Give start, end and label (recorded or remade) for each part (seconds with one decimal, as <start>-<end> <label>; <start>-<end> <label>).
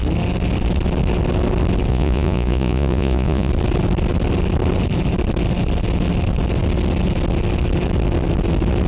0.0-1.9 recorded; 1.9-3.5 remade; 3.5-8.9 recorded